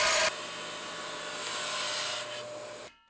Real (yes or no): yes